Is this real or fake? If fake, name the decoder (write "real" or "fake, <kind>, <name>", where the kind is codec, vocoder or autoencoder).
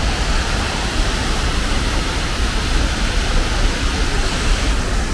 fake, vocoder, BigVGAN v2